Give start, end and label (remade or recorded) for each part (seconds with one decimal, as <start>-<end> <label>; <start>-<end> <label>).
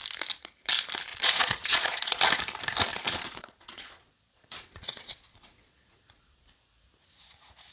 0.0-1.1 recorded; 1.1-2.2 remade; 2.2-2.9 recorded; 2.9-6.5 remade; 6.5-7.7 recorded